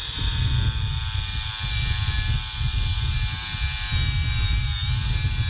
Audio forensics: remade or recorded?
recorded